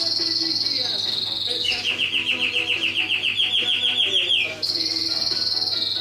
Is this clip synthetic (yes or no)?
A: no